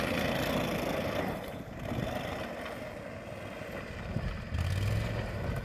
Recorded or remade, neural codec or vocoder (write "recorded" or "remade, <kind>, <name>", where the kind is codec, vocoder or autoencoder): recorded